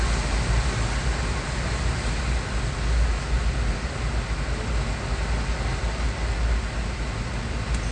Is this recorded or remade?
recorded